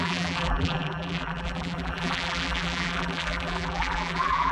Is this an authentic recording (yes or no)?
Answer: no